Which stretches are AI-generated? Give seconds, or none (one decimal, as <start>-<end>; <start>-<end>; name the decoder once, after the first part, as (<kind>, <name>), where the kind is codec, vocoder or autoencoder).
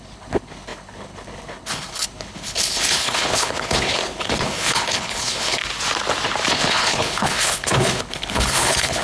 0.0-5.6 (codec, HILCodec); 6.5-9.0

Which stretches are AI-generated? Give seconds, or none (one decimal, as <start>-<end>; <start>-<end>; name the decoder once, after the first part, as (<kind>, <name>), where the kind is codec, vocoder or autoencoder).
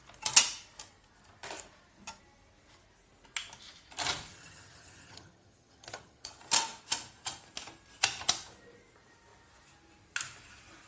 4.3-6.4 (vocoder, HiFi-GAN)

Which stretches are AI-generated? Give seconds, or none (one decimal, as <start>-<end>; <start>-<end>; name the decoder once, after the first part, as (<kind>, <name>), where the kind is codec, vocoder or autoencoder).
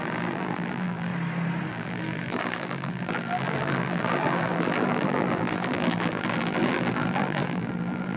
0.0-1.1 (vocoder, BigVGAN v2); 1.7-8.2